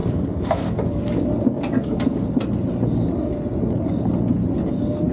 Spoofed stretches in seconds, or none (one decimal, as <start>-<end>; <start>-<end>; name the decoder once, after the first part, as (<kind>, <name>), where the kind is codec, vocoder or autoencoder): 0.0-1.0 (codec, DAC); 1.5-2.2

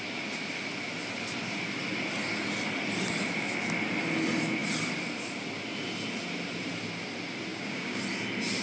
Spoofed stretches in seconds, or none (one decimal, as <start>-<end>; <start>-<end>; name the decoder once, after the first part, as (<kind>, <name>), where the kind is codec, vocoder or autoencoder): 7.5-8.0 (codec, DAC)

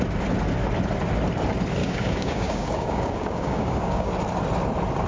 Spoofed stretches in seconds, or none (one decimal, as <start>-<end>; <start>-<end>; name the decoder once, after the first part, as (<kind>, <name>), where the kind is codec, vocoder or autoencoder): 1.8-4.1 (codec, DAC)

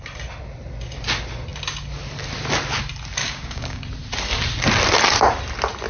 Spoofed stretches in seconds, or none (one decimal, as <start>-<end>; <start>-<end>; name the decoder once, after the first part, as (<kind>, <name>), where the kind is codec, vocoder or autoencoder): 3.2-3.8 (codec, DAC)

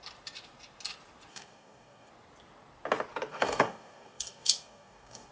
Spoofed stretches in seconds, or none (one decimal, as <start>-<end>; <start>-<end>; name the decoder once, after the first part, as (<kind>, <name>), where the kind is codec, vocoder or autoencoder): 1.3-2.1 (codec, DAC); 3.3-5.3